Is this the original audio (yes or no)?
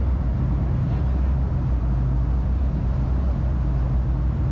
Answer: yes